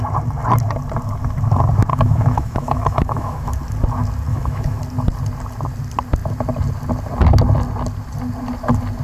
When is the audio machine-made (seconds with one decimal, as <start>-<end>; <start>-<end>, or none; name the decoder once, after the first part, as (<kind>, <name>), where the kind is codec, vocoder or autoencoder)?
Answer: 1.9-3.5 (autoencoder, DAC-VAE); 4.3-4.8